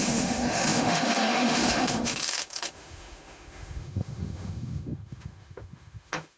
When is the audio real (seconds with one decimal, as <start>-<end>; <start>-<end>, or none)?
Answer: none